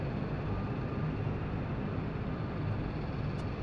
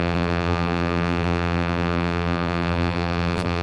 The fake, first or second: second